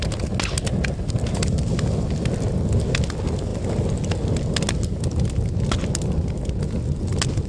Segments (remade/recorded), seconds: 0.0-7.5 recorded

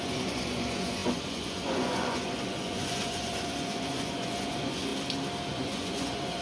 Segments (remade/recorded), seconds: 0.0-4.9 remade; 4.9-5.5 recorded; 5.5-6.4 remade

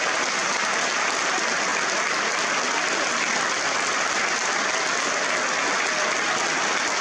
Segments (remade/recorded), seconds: 0.0-7.0 recorded

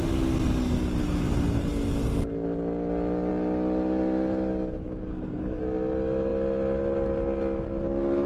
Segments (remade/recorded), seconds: 0.0-5.1 recorded; 5.1-5.6 remade; 5.6-8.3 recorded

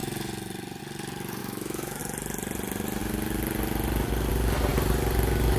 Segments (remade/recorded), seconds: 0.0-1.4 recorded; 1.4-2.0 remade; 2.0-5.6 recorded

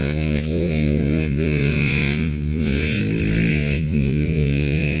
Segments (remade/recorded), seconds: 0.0-3.0 remade; 3.0-3.5 recorded; 3.5-5.0 remade

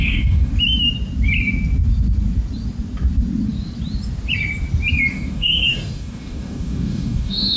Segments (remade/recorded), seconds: 0.0-0.5 remade; 0.5-5.1 recorded; 5.1-7.6 remade

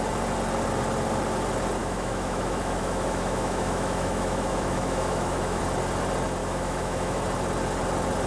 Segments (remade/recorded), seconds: 0.0-1.8 recorded; 1.8-5.6 remade; 5.6-6.4 recorded; 6.4-7.2 remade; 7.2-8.3 recorded